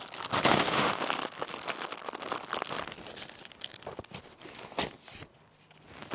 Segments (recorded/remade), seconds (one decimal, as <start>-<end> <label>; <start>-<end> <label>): 0.0-0.5 recorded; 0.5-1.0 remade; 1.0-6.1 recorded